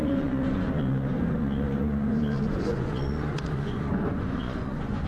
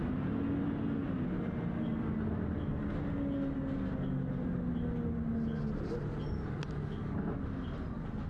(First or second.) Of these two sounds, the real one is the second